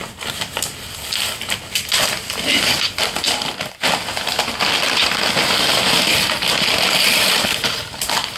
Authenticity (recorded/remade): recorded